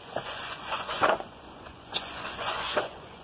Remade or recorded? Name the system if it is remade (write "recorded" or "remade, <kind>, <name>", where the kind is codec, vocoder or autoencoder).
remade, vocoder, Vocos